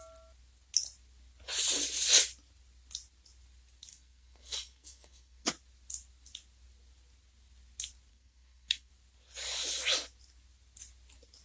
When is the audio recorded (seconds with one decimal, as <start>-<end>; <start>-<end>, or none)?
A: 0.0-3.9; 5.5-8.1; 8.9-11.4

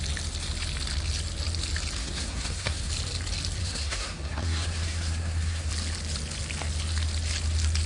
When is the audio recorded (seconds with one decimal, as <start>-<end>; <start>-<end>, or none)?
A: 0.0-2.0; 2.9-3.6; 5.7-7.9